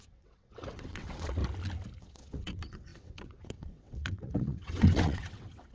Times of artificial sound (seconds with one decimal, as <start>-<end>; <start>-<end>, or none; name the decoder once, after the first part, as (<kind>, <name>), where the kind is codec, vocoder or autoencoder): 0.0-1.4 (vocoder, WaveNeXt); 2.0-5.7